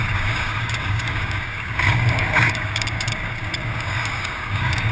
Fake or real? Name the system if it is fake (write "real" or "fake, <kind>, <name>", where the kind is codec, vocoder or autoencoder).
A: fake, codec, DAC